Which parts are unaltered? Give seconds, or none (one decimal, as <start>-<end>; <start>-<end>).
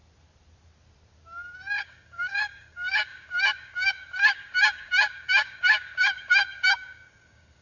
0.0-1.8